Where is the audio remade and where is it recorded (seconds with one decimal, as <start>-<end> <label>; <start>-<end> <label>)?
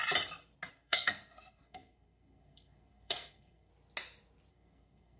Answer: 0.0-0.7 recorded; 0.7-3.7 remade; 3.7-4.5 recorded; 4.5-5.2 remade